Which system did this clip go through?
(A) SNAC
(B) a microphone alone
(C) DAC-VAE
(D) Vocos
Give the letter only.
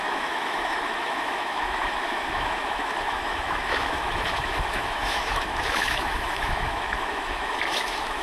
C